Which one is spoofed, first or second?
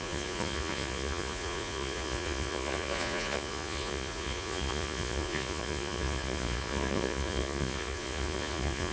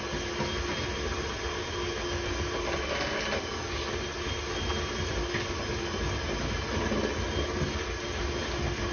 first